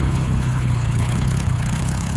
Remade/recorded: remade